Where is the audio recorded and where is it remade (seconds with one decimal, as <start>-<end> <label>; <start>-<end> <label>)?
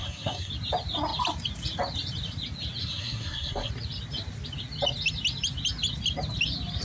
0.0-0.5 remade; 0.5-2.8 recorded; 2.8-3.7 remade; 3.7-6.8 recorded